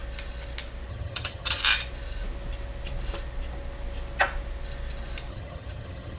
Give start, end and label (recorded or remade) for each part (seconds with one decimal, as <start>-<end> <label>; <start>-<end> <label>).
0.0-0.9 recorded; 0.9-1.6 remade; 1.6-5.3 recorded; 5.3-6.2 remade